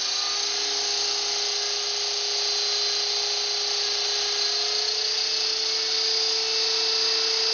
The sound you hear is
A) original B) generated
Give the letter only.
A